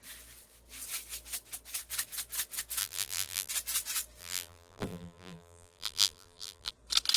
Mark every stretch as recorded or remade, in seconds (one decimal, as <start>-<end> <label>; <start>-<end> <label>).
0.0-2.8 recorded; 2.8-3.5 remade; 3.5-4.2 recorded; 4.2-6.7 remade; 6.7-7.2 recorded